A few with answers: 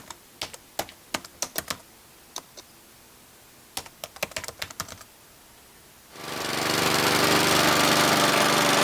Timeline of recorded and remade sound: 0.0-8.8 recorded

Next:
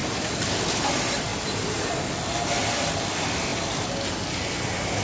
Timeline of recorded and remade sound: 0.0-5.0 recorded

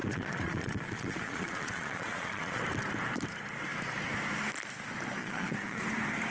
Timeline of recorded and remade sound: 0.0-2.6 remade; 2.6-5.2 recorded; 5.2-5.8 remade; 5.8-6.3 recorded

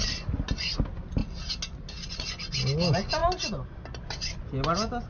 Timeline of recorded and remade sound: 0.0-5.1 recorded

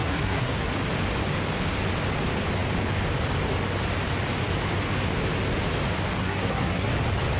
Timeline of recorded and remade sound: 0.0-0.7 remade; 0.7-6.2 recorded; 6.2-6.9 remade; 6.9-7.4 recorded

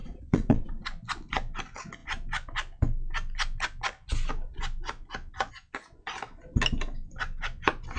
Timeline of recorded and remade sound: 0.0-0.7 remade; 0.7-8.0 recorded

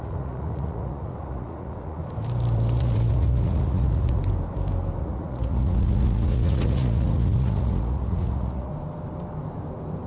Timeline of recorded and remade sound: 0.0-2.0 remade; 2.0-2.8 recorded; 2.8-4.2 remade; 4.2-5.0 recorded; 5.0-8.7 remade; 8.7-10.1 recorded

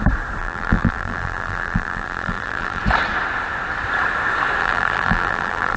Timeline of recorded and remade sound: 0.0-0.4 recorded; 0.4-2.8 remade; 2.8-4.6 recorded; 4.6-5.8 remade